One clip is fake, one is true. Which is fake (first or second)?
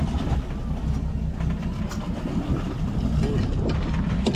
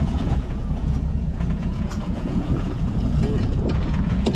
second